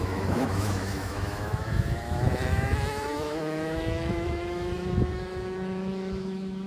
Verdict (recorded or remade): remade